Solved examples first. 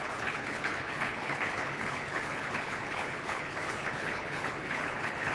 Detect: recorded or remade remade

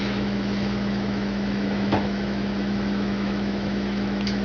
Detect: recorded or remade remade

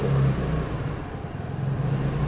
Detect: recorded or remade recorded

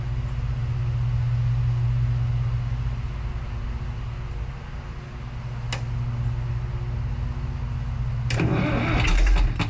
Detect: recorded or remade recorded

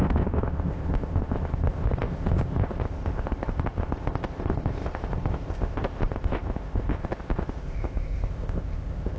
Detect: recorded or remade remade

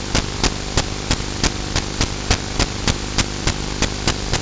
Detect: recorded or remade recorded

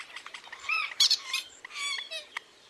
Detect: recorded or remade remade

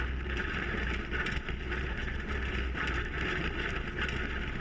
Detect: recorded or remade recorded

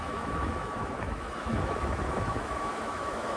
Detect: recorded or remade remade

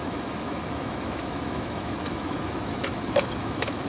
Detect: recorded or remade remade